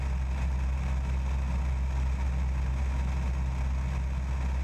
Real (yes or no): yes